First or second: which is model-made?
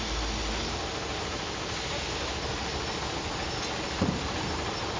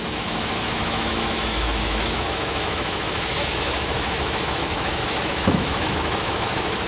second